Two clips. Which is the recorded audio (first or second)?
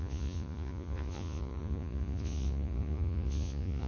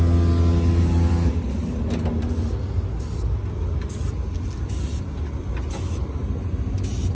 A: second